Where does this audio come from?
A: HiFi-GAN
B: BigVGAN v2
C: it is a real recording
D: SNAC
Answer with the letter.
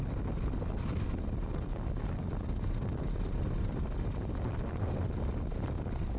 C